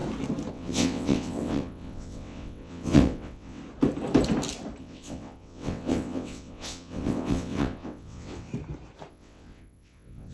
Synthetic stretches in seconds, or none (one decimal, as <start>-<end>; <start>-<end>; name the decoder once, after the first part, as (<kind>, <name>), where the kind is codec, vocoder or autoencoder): 0.5-3.6 (vocoder, WaveNeXt); 4.8-8.5; 9.1-10.3